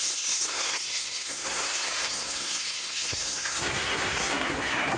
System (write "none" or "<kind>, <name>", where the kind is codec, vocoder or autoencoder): codec, SNAC